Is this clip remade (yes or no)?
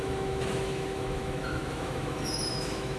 yes